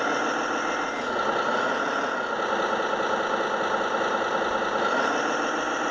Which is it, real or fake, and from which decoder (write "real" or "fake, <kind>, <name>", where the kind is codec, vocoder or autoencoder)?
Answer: real